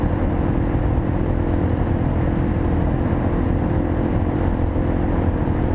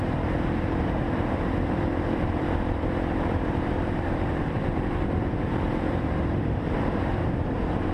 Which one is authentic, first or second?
first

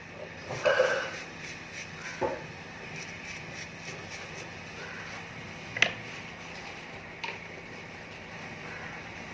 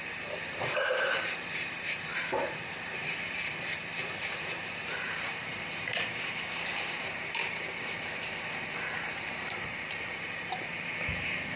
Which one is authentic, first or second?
first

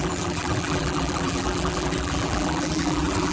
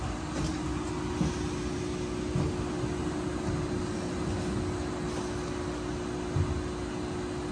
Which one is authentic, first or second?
second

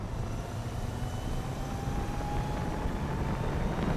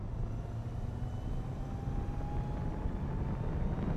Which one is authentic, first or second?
second